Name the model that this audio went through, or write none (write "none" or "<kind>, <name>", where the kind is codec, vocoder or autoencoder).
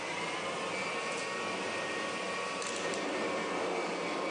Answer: none